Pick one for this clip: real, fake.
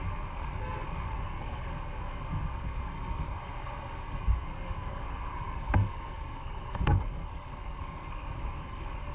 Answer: fake